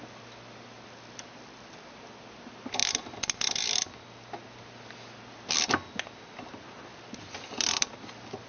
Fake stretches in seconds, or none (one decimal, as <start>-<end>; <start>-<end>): none